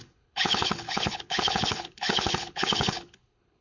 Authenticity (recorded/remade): remade